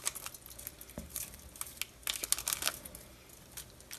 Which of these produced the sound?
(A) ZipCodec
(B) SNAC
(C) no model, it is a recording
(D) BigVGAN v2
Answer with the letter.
C